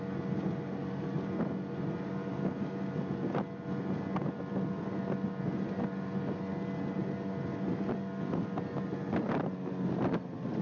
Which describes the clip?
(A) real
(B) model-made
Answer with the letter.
A